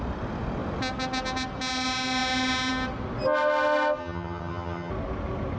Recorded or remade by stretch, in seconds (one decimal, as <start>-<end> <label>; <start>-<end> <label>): 0.0-4.0 recorded; 4.0-4.9 remade; 4.9-5.6 recorded